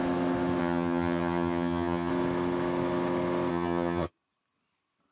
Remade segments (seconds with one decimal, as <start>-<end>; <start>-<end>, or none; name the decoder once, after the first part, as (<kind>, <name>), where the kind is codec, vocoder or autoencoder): 0.6-2.1 (vocoder, HiFi-GAN); 3.5-4.1